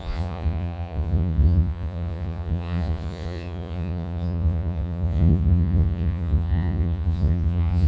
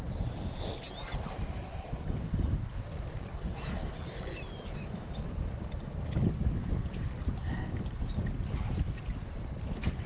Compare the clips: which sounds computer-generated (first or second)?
first